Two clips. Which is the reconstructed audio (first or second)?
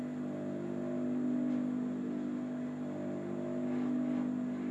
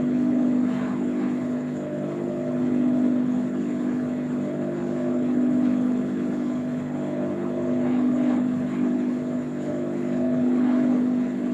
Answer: second